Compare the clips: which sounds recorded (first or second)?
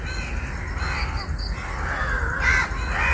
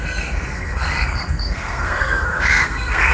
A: first